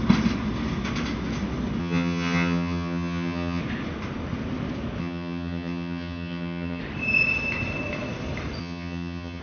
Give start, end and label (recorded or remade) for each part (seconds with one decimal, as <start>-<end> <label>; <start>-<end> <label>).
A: 0.0-1.8 recorded; 1.8-3.6 remade; 3.6-5.0 recorded; 5.0-6.8 remade; 6.8-8.6 recorded; 8.6-9.4 remade